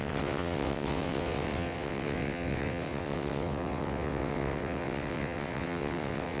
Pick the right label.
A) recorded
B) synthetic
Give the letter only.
B